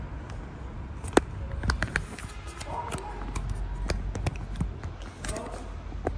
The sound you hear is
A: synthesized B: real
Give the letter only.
B